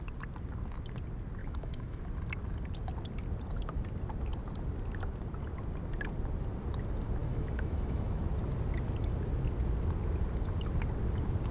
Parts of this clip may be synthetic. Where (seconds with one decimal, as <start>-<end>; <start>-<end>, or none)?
1.4-2.0; 7.2-8.2